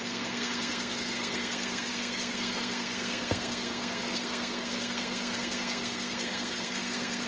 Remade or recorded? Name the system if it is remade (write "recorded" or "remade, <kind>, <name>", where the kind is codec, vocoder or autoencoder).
remade, codec, SNAC